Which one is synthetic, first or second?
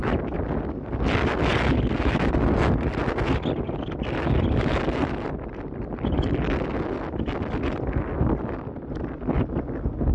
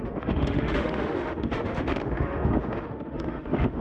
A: second